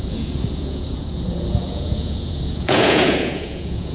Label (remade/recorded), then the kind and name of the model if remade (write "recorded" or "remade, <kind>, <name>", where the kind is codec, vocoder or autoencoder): remade, vocoder, Vocos